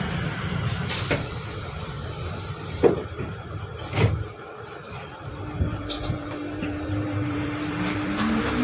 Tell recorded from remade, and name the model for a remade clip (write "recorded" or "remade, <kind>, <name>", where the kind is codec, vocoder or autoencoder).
remade, vocoder, BigVGAN v2